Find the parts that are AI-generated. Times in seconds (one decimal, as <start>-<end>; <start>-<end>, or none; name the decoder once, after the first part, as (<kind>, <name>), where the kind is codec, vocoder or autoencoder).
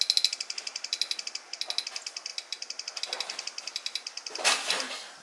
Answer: none